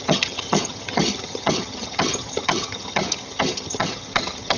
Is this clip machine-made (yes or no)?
yes